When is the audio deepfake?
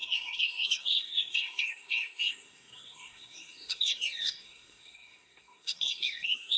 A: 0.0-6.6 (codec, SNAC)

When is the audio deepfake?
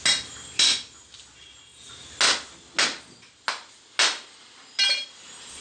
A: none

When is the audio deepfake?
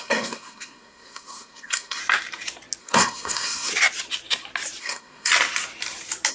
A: 0.0-2.0 (codec, SNAC); 2.8-3.7; 4.8-5.3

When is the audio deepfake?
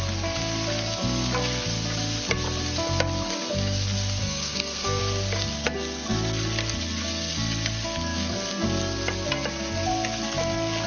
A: 4.2-5.0 (codec, SNAC)